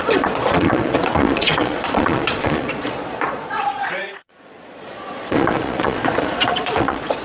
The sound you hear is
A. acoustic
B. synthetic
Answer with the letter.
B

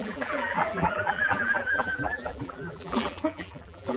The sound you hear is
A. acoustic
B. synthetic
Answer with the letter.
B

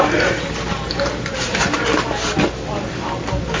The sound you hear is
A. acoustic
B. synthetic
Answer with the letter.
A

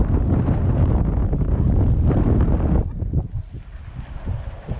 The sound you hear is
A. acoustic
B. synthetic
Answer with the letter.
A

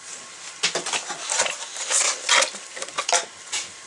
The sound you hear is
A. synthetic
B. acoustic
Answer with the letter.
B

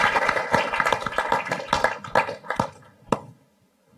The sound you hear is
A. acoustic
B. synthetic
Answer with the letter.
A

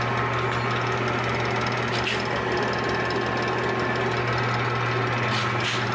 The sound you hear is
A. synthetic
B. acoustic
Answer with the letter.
B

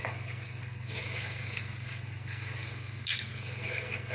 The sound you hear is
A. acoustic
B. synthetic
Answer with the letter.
B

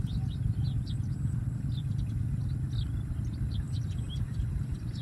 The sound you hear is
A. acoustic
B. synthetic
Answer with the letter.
B